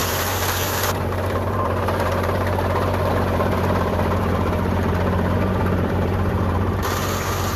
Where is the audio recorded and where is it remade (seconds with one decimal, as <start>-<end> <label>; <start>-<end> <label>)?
0.0-7.6 remade